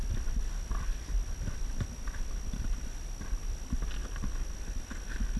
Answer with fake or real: real